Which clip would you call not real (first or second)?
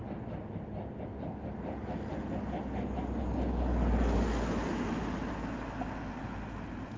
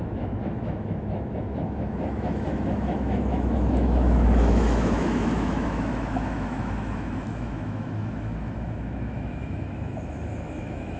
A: second